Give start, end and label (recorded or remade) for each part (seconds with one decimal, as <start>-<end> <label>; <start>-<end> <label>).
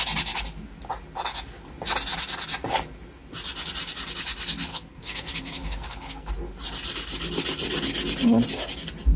0.0-4.7 recorded; 4.7-6.3 remade; 6.3-9.2 recorded